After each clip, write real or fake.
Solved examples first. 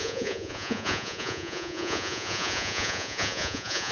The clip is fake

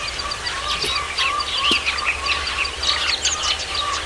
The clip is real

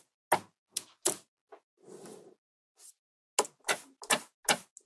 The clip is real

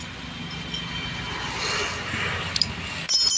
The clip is real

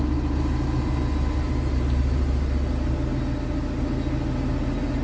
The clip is real